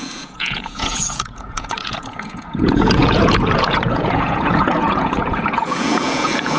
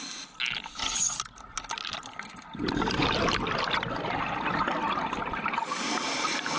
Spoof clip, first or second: first